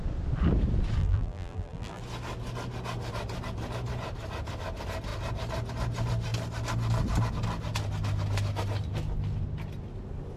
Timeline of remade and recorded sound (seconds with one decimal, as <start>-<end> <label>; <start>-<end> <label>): 0.0-1.0 recorded; 1.0-2.0 remade; 2.0-10.4 recorded